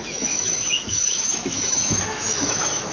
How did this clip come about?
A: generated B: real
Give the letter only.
A